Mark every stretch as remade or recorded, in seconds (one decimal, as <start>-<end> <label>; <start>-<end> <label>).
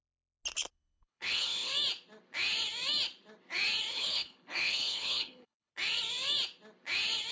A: 0.0-0.7 recorded; 0.7-1.7 remade; 1.7-3.9 recorded; 3.9-5.7 remade; 5.7-7.3 recorded